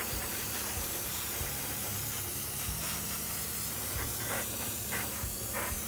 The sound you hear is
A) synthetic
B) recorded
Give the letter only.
A